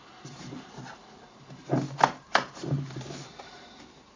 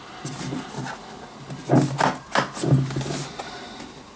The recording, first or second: second